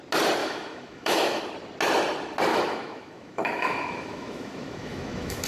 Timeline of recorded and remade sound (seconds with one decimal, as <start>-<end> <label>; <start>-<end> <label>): 0.0-0.4 recorded; 0.4-1.4 remade; 1.4-2.5 recorded; 2.5-5.5 remade

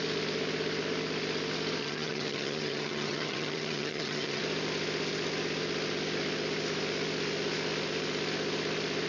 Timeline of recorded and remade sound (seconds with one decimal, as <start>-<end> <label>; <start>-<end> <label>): 0.0-1.8 recorded; 1.8-4.4 remade; 4.4-9.1 recorded

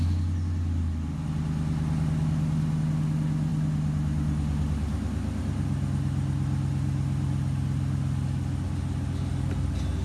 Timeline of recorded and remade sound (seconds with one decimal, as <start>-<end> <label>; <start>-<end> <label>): 0.0-10.0 recorded

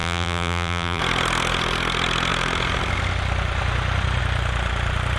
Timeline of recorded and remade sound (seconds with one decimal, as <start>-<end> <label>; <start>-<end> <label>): 0.0-1.0 remade; 1.0-5.2 recorded

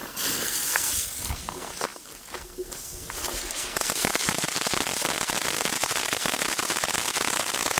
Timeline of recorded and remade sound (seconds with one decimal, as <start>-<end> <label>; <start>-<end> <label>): 0.0-7.8 remade

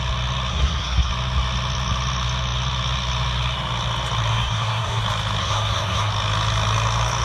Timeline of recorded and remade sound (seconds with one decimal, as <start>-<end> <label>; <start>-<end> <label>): 0.0-0.5 recorded; 0.5-1.1 remade; 1.1-4.3 recorded; 4.3-5.0 remade; 5.0-5.4 recorded; 5.4-6.1 remade; 6.1-7.2 recorded